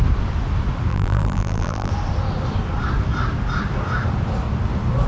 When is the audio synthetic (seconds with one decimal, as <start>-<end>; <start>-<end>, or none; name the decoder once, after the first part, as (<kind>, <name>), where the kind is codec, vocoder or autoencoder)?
0.9-1.9 (vocoder, BigVGAN v2)